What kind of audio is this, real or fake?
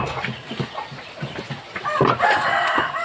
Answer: real